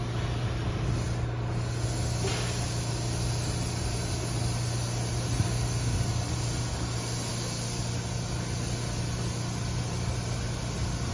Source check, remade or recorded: recorded